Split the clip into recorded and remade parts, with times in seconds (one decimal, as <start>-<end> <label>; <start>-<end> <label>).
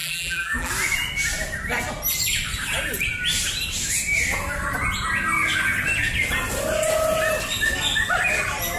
0.0-0.7 remade; 0.7-8.8 recorded